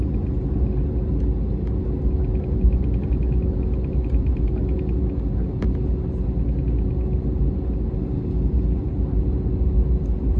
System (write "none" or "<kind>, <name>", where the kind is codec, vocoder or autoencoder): none